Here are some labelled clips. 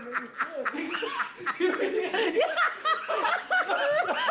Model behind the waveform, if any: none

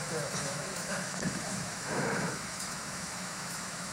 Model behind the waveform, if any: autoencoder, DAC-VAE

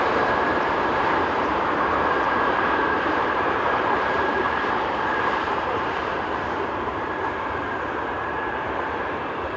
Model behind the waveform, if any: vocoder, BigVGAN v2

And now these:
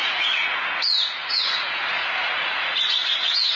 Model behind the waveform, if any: vocoder, Vocos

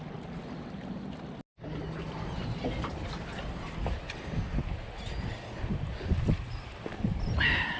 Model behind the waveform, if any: none